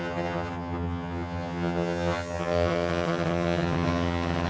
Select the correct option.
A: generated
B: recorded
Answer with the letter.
A